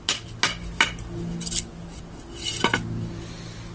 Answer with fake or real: real